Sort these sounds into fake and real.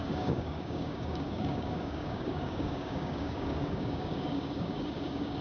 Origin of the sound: fake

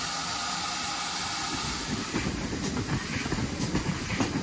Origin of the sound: real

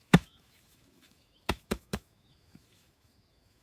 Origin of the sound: fake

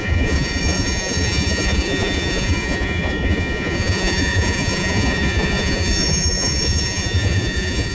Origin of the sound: fake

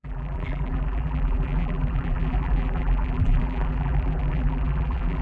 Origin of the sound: fake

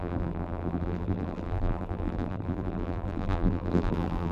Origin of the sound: fake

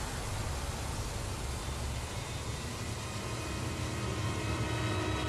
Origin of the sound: real